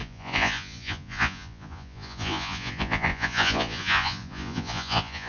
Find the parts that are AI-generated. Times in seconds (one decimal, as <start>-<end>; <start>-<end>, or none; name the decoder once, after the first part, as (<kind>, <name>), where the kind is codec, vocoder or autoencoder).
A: 0.0-5.3 (vocoder, Vocos)